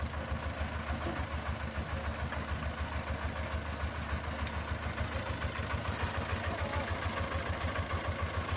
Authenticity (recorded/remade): recorded